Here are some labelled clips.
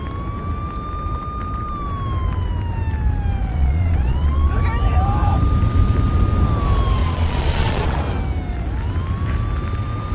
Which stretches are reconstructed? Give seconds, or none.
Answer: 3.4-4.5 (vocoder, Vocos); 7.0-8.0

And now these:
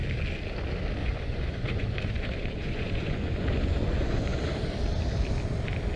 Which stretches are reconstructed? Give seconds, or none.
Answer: 1.0-4.4 (vocoder, Vocos)

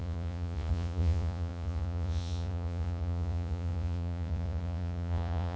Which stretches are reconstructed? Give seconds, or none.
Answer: 0.0-5.6 (vocoder, Vocos)

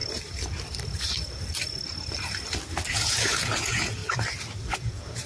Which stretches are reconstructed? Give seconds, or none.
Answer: 2.9-4.0 (vocoder, Vocos); 4.7-5.3